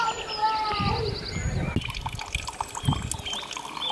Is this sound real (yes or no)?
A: yes